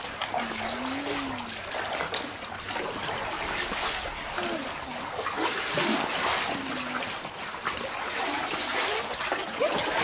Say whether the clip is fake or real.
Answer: real